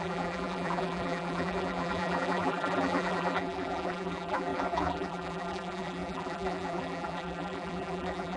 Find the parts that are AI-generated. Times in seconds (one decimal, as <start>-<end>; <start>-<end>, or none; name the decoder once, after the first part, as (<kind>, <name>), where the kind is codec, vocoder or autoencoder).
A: 0.0-8.4 (vocoder, BigVGAN v2)